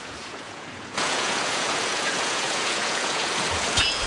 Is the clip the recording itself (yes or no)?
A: no